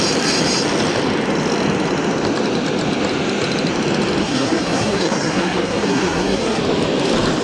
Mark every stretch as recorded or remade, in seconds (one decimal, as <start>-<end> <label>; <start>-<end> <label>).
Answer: 0.0-4.2 recorded; 4.2-6.6 remade; 6.6-7.4 recorded